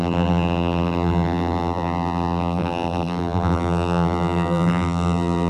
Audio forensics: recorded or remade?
remade